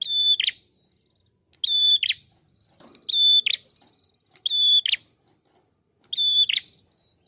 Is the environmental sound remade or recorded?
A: recorded